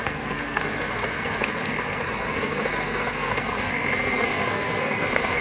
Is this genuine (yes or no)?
no